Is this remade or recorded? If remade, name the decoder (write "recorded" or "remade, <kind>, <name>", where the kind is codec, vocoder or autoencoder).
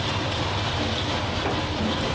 recorded